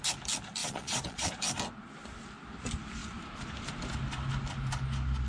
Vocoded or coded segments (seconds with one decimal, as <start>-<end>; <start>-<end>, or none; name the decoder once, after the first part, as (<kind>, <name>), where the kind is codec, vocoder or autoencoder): 0.6-1.3 (vocoder, Vocos)